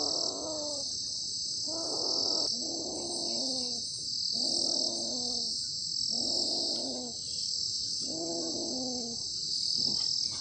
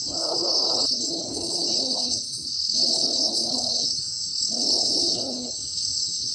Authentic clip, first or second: first